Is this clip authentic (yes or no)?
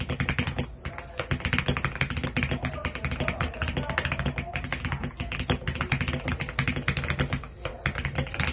yes